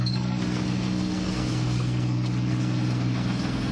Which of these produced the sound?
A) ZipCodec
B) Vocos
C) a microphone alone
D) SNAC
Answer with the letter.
D